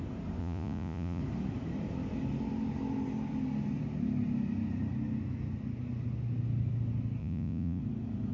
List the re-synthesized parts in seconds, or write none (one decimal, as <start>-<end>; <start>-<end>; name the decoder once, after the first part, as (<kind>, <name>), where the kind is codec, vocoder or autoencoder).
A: 0.4-1.2 (vocoder, Vocos); 7.2-7.8